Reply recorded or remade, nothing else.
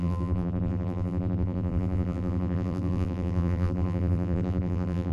remade